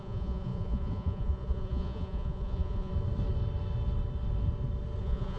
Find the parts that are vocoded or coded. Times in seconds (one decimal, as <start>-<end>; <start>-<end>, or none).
0.0-2.9; 5.0-5.4